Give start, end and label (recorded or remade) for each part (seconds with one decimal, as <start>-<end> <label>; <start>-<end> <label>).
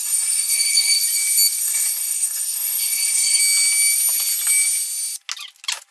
0.0-1.0 remade; 1.0-1.6 recorded; 1.6-3.4 remade; 3.4-5.9 recorded